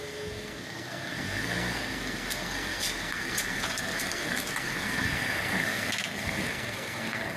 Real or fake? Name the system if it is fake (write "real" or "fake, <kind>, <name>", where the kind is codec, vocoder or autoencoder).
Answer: fake, codec, SNAC